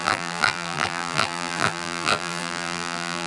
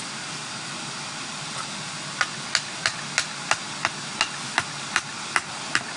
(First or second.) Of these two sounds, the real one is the second